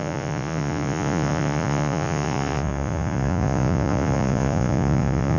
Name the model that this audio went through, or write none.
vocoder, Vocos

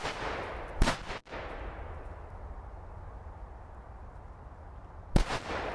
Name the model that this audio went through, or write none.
none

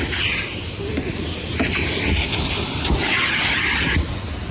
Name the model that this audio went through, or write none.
none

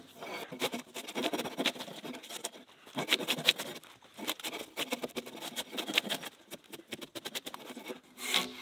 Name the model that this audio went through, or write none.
none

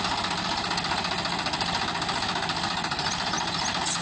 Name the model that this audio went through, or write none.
none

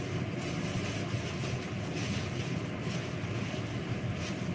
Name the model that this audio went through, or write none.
none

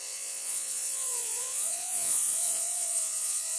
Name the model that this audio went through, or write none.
vocoder, Vocos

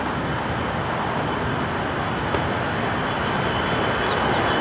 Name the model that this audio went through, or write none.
none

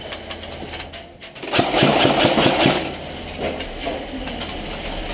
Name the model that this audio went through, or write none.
none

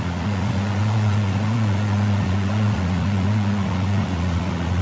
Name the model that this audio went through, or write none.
vocoder, Vocos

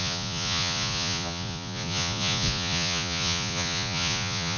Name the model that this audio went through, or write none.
vocoder, Vocos